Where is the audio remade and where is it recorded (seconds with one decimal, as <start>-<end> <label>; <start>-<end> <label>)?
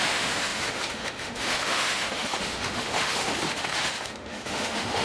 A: 0.0-5.0 remade